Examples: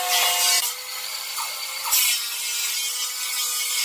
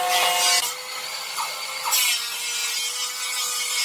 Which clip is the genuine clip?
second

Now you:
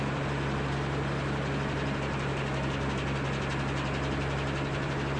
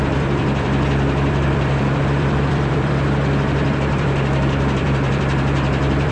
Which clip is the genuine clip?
first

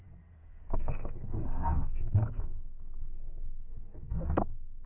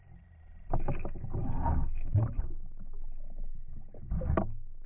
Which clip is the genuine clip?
second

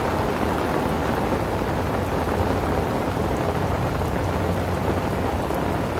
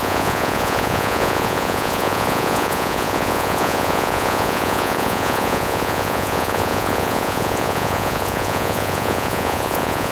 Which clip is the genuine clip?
first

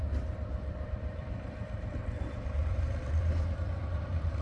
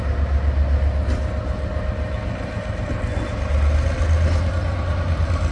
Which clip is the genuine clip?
second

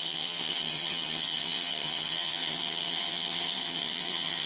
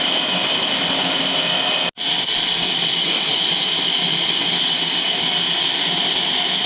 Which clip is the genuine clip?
second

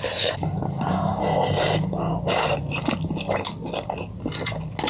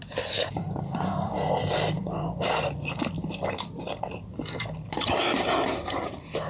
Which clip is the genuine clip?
first